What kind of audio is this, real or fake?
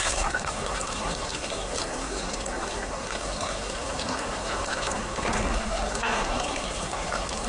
fake